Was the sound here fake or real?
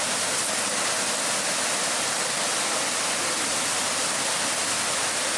real